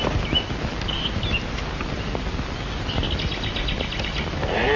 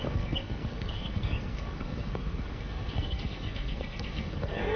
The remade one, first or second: second